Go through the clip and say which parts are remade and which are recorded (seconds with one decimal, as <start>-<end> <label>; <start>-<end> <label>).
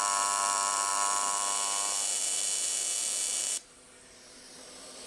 0.0-5.1 remade